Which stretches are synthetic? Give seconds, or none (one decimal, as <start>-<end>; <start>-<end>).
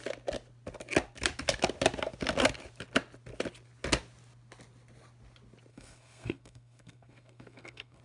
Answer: 5.7-8.0